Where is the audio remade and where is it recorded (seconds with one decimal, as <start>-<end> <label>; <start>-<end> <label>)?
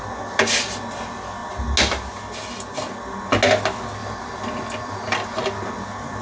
0.0-4.0 recorded; 4.0-5.4 remade; 5.4-6.2 recorded